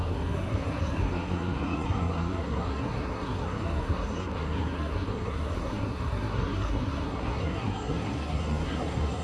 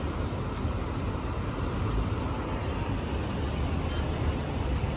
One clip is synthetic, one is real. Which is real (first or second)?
second